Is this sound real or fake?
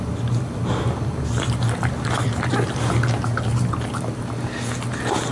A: real